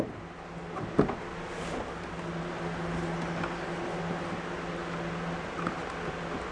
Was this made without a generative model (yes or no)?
yes